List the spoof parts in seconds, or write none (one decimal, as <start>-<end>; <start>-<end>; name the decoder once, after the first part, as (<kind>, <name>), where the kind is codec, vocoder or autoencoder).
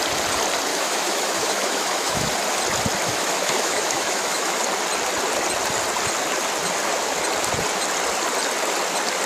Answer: 0.7-2.3 (autoencoder, DAC-VAE); 3.1-4.6